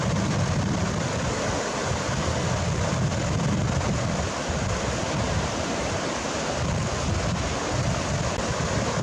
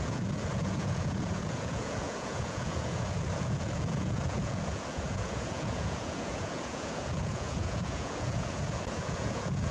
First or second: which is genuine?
first